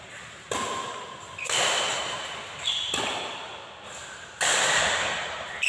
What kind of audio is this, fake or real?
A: real